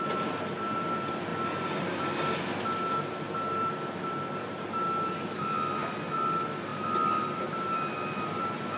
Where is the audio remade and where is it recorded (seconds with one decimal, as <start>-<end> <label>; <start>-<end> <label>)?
0.0-1.3 recorded; 1.3-2.0 remade; 2.0-6.7 recorded; 6.7-8.4 remade; 8.4-8.8 recorded